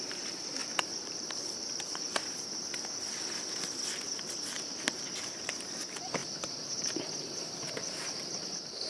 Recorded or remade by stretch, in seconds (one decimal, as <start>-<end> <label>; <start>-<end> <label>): 0.0-2.2 remade; 2.2-5.0 recorded; 5.0-8.9 remade